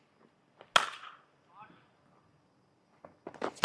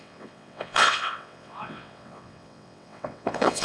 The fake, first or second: second